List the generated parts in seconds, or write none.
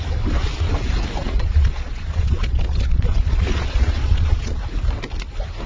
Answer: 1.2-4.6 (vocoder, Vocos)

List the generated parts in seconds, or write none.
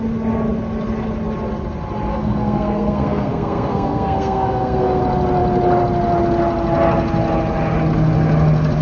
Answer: 2.1-5.0 (codec, SNAC)